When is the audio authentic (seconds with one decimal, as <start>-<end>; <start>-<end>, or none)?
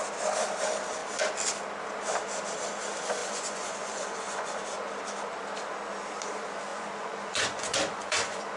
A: 0.0-3.2; 4.6-6.7